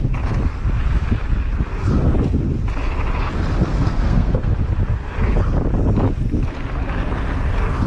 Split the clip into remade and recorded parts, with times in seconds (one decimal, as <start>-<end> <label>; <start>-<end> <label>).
0.0-3.7 recorded; 3.7-4.5 remade; 4.5-7.9 recorded